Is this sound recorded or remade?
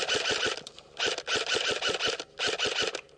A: recorded